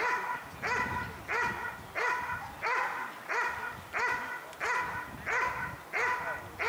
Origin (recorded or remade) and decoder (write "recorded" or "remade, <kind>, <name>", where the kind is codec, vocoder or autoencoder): recorded